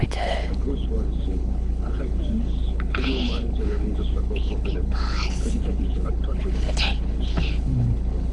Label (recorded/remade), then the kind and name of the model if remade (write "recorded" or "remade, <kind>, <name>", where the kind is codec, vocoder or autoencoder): remade, codec, HILCodec